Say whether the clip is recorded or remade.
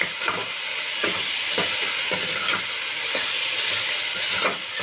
recorded